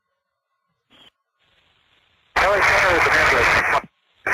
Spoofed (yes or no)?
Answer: no